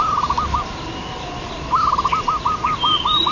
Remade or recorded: recorded